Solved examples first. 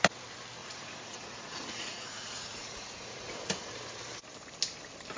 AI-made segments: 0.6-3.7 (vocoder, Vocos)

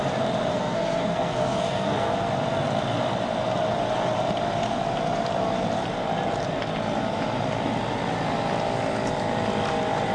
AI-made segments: 0.5-2.3 (codec, SNAC)